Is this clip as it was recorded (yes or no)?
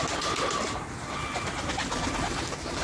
yes